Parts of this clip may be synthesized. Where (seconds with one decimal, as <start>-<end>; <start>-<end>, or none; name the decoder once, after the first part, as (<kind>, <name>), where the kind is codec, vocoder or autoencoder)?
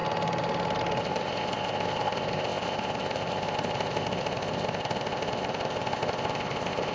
1.0-6.9 (codec, ZipCodec)